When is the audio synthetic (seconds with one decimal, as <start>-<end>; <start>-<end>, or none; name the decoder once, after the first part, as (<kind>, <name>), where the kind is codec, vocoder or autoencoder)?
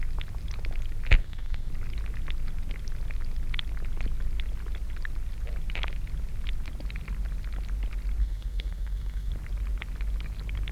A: 1.2-1.7 (codec, SNAC); 8.2-9.3